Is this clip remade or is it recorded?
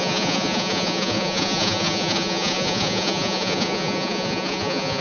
remade